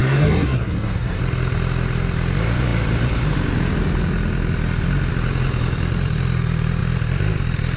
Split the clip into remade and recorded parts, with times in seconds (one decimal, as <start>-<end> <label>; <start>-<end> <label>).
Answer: 0.0-1.2 remade; 1.2-7.8 recorded